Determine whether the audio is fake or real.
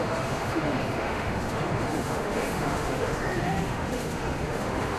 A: fake